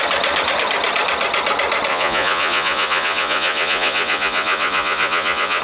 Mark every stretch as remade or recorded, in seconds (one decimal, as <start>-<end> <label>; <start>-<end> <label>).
0.0-1.9 recorded; 1.9-5.6 remade